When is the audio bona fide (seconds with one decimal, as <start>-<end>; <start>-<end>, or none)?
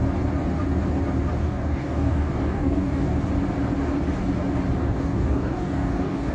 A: 0.0-1.4; 3.2-4.8